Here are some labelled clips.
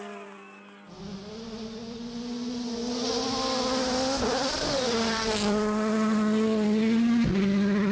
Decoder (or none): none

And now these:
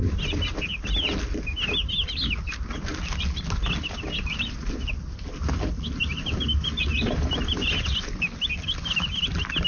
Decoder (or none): none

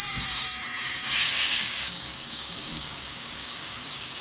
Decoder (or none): codec, DAC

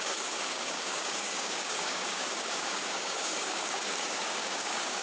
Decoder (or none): codec, DAC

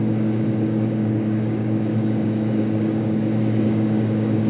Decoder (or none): codec, DAC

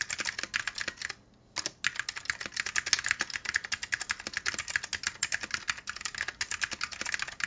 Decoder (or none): none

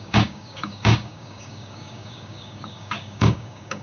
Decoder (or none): codec, DAC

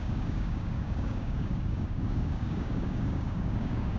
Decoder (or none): codec, DAC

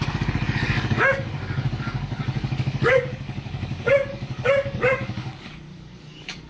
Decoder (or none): codec, DAC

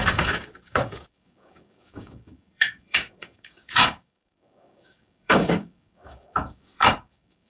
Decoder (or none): codec, DAC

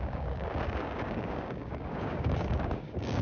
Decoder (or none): codec, DAC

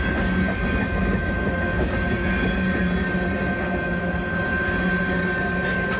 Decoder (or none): none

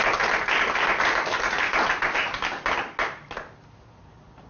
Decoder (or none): none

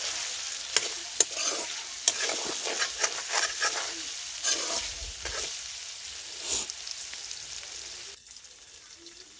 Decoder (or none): none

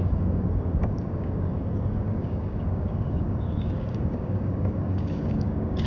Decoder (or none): codec, DAC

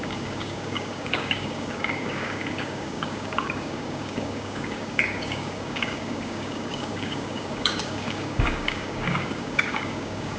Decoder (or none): codec, DAC